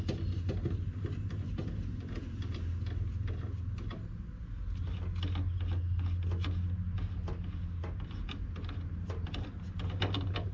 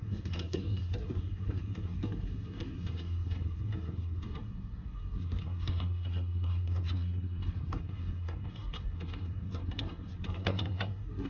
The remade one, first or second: second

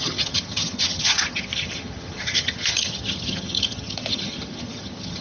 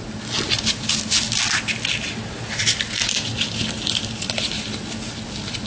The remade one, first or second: first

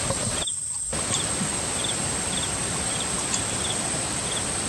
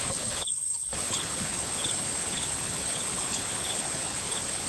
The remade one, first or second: second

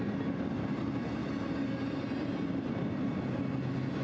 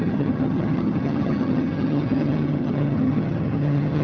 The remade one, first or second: second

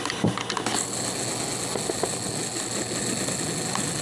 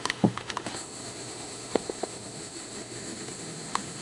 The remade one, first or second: second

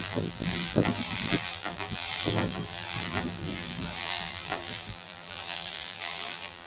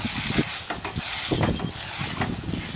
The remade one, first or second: first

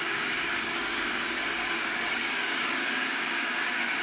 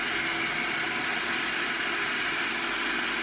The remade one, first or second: first